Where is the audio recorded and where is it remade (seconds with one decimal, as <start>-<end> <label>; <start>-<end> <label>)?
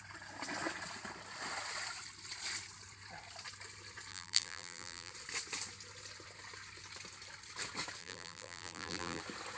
0.0-4.1 recorded; 4.1-5.1 remade; 5.1-8.0 recorded; 8.0-9.2 remade; 9.2-9.6 recorded